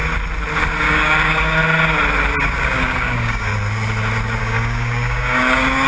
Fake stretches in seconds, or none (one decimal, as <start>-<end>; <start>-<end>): 0.8-1.6; 2.4-3.5; 4.4-5.9